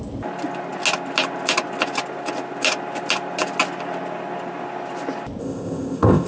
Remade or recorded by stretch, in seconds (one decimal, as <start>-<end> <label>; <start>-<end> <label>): 0.0-5.4 recorded; 5.4-6.3 remade

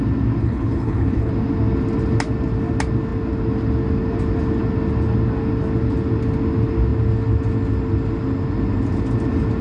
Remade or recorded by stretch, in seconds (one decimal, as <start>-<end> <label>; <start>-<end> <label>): 0.0-0.4 recorded; 0.4-1.3 remade; 1.3-9.6 recorded

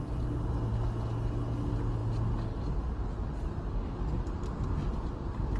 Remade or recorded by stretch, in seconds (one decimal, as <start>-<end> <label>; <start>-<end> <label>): 0.0-5.6 recorded

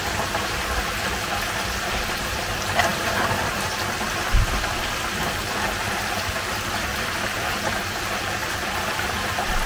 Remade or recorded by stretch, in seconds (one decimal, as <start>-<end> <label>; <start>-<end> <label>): 0.0-9.7 remade

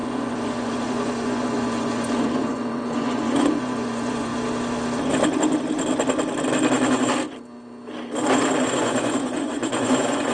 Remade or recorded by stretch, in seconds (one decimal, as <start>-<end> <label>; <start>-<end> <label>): 0.0-4.3 remade; 4.3-8.7 recorded; 8.7-10.3 remade

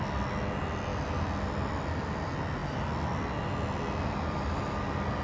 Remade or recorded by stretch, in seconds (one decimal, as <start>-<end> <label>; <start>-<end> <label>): 0.0-5.2 recorded

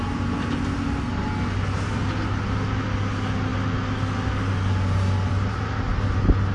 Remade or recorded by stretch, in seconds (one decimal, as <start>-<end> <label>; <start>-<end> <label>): 0.0-6.5 recorded

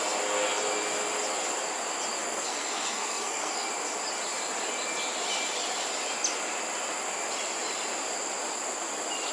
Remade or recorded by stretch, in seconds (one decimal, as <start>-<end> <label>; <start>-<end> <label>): 0.0-2.2 recorded; 2.2-3.7 remade; 3.7-9.3 recorded